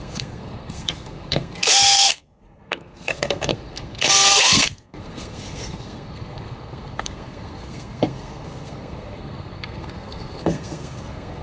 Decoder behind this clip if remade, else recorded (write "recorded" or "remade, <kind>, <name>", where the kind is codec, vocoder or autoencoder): remade, codec, SNAC